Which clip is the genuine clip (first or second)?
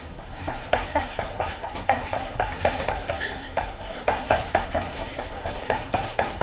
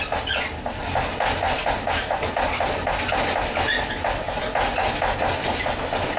second